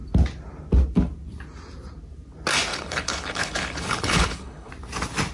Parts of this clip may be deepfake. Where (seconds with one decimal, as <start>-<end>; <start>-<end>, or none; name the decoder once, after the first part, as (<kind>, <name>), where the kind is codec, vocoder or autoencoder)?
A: 2.7-4.7 (codec, HILCodec)

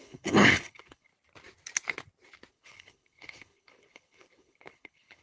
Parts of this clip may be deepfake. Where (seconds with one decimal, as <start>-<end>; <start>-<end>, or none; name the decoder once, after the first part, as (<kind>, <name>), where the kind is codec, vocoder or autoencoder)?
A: 0.0-1.1 (codec, HILCodec); 2.5-5.2

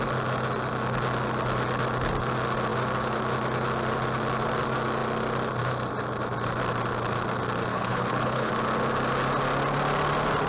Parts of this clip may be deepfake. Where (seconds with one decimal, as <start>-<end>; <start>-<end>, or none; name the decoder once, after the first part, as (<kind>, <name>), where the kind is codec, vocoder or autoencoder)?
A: 7.7-8.5 (codec, HILCodec)